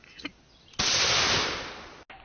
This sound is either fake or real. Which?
real